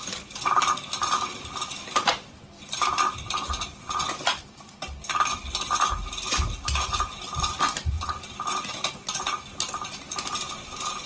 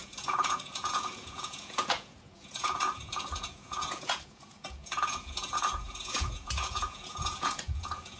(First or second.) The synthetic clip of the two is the second